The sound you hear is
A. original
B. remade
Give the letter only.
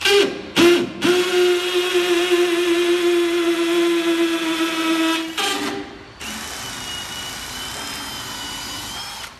A